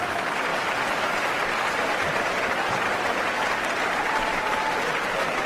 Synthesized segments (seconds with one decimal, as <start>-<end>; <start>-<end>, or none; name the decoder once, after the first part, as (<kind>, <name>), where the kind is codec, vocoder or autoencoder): none